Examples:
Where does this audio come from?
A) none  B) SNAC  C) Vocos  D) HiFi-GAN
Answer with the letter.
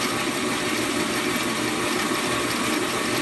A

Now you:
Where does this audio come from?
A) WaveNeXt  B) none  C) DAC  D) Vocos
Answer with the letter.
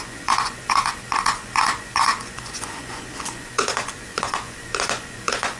D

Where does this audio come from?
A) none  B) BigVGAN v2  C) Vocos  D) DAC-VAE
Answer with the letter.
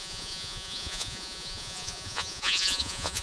C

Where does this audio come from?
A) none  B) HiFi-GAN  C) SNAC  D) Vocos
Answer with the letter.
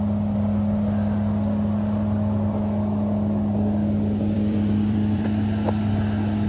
A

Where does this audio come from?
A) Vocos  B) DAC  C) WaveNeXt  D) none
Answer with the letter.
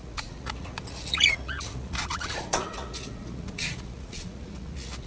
A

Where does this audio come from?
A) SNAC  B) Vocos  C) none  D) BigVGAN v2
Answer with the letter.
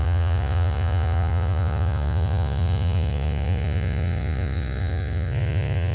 B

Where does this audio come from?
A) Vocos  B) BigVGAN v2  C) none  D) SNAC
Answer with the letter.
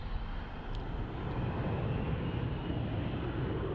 C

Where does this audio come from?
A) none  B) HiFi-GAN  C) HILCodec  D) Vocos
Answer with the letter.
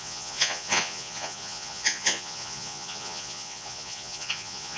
D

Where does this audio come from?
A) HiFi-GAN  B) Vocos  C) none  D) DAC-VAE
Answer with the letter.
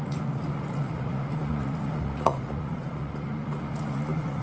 B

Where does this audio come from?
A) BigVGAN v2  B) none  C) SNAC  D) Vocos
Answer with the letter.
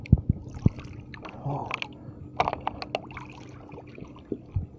B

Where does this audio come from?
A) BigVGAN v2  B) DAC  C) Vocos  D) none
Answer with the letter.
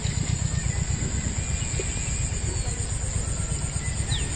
D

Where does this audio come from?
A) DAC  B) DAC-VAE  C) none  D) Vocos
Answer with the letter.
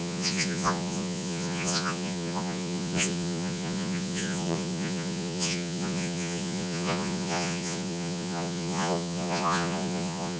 D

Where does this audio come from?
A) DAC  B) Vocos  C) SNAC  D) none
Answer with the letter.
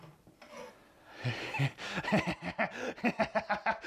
D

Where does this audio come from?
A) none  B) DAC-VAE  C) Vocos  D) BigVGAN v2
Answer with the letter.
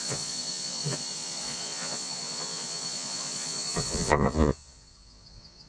C